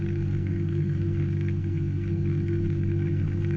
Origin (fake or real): fake